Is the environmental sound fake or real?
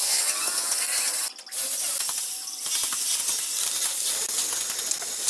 real